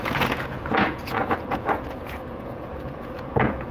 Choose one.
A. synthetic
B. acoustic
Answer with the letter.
A